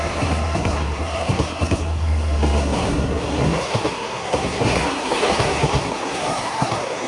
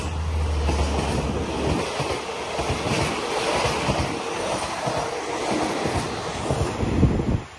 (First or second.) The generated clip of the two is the first